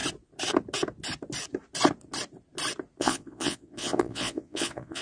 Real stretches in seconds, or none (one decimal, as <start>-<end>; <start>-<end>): 0.0-3.0